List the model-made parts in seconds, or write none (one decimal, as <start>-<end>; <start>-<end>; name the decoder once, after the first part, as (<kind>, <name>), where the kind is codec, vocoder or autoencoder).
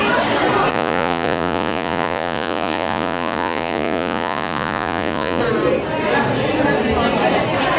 0.7-5.4 (vocoder, Vocos)